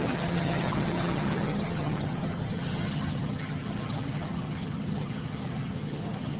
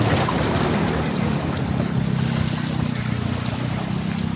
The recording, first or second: second